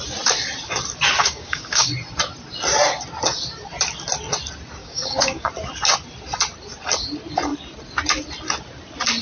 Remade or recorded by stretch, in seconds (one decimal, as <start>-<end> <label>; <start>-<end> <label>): 0.0-1.2 recorded; 1.2-1.9 remade; 1.9-4.8 recorded; 4.8-5.5 remade; 5.5-9.2 recorded